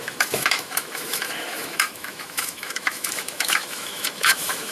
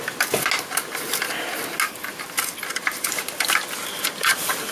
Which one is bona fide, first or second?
second